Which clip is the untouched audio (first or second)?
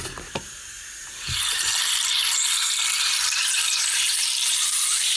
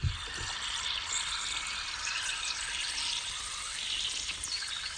second